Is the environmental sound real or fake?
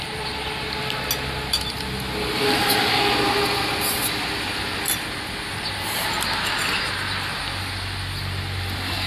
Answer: real